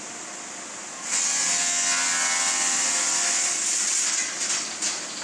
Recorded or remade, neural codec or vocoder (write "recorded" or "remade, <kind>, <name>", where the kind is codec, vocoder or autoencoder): recorded